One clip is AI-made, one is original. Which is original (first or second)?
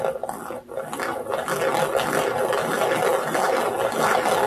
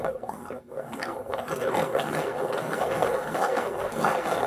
first